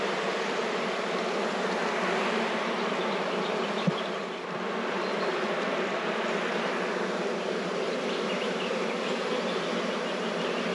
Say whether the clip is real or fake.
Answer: real